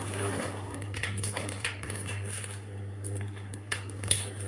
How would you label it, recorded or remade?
remade